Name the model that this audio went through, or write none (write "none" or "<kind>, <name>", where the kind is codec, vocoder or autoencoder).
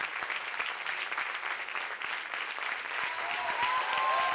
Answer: none